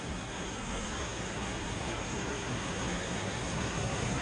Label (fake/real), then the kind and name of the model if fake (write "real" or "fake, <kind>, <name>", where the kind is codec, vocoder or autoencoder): fake, codec, SNAC